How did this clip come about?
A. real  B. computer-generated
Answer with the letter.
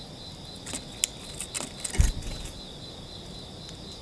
A